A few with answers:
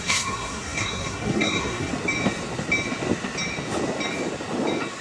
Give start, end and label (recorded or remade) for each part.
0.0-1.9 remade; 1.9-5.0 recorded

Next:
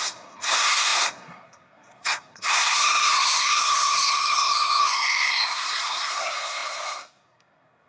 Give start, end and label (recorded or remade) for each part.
0.0-7.9 remade